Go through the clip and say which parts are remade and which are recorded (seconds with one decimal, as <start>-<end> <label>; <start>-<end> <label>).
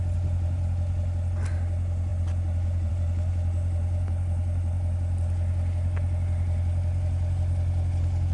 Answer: 0.0-8.3 recorded